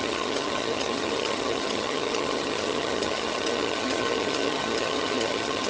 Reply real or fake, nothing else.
fake